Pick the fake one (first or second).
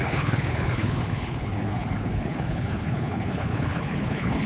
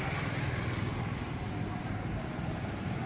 first